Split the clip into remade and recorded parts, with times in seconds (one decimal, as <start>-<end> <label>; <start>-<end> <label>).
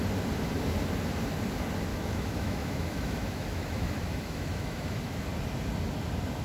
0.0-1.9 recorded; 1.9-5.2 remade; 5.2-6.4 recorded